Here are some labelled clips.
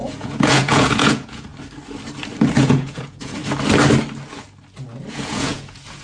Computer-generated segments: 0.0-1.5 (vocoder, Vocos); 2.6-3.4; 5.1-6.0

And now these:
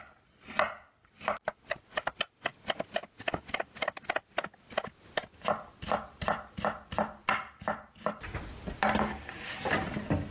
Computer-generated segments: none

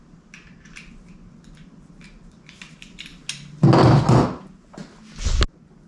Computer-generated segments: none

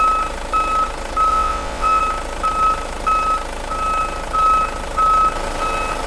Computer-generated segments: 1.3-2.0 (vocoder, WaveNeXt)

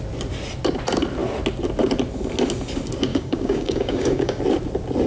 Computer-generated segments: 3.1-4.4 (codec, DAC)